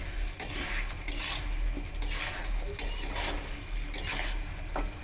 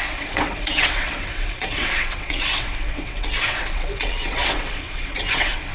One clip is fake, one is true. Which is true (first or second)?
first